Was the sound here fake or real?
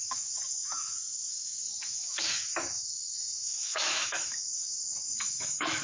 fake